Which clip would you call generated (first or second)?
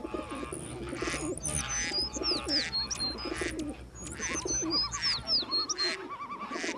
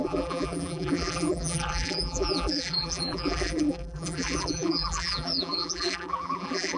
second